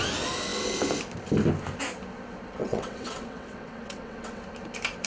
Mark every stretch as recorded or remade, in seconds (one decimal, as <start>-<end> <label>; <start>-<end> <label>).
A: 0.0-2.6 recorded; 2.6-4.4 remade; 4.4-5.1 recorded